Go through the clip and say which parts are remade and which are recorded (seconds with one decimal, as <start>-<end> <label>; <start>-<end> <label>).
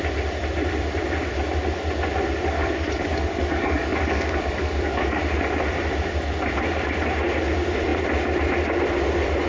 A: 0.0-2.6 recorded; 2.6-5.2 remade; 5.2-9.5 recorded